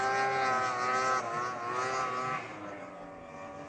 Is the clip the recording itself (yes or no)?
yes